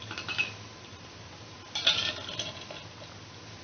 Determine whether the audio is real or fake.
real